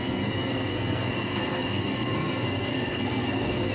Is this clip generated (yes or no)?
yes